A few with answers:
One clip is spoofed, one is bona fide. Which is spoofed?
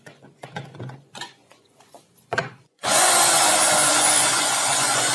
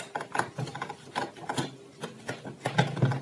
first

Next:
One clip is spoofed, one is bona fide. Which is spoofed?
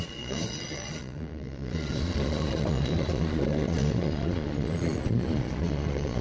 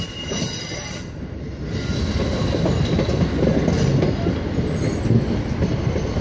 first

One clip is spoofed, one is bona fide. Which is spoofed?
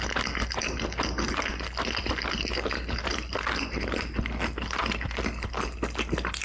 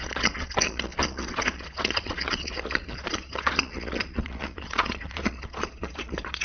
second